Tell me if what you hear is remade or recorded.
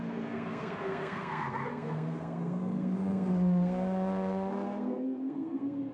remade